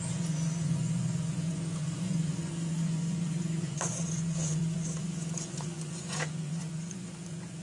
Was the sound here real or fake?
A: fake